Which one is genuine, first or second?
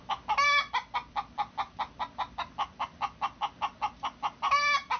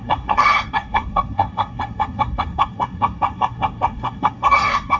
first